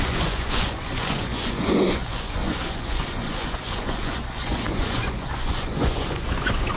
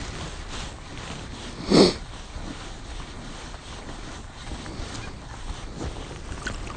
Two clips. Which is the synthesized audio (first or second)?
first